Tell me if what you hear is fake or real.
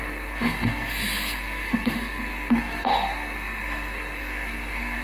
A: fake